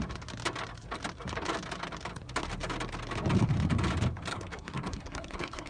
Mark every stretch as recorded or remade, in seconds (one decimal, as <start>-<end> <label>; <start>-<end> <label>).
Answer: 0.0-4.3 recorded; 4.3-5.7 remade